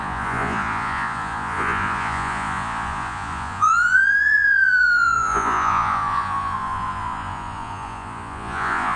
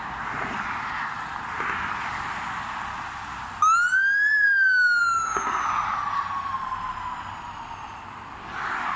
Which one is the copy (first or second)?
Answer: first